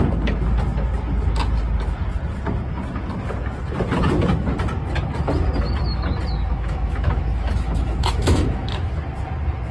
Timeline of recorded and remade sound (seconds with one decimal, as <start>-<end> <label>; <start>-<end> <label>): 0.0-6.5 recorded; 6.5-8.9 remade; 8.9-9.7 recorded